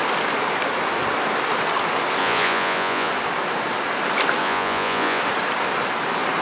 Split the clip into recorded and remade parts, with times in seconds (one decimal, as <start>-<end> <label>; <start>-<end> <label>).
0.0-2.2 recorded; 2.2-3.1 remade; 3.1-4.4 recorded; 4.4-5.2 remade; 5.2-6.4 recorded